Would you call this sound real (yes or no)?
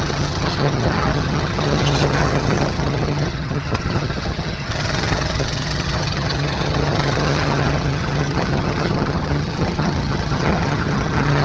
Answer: no